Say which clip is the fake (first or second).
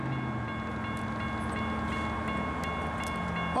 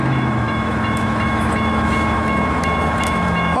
second